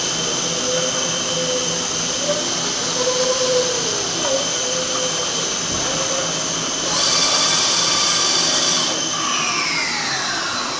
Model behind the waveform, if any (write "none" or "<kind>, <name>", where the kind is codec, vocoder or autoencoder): none